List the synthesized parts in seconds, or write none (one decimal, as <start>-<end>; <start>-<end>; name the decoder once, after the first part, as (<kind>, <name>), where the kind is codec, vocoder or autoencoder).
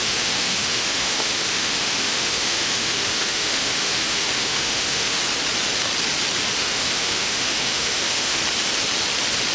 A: 0.0-5.2 (autoencoder, DAC-VAE); 6.6-8.4